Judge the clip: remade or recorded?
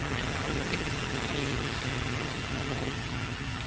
remade